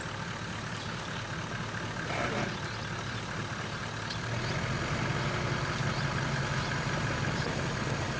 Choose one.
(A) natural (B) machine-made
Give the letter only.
A